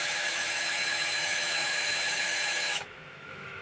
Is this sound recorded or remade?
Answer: remade